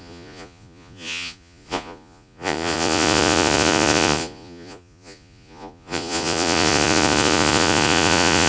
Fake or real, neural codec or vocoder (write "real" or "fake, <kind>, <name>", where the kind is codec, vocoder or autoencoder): fake, vocoder, Vocos